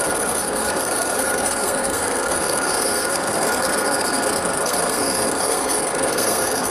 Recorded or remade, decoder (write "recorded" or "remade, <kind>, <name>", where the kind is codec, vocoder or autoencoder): remade, codec, SNAC